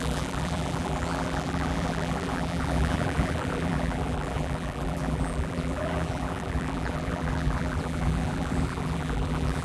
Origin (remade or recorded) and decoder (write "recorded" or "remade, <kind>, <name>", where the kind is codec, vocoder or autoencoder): remade, vocoder, BigVGAN v2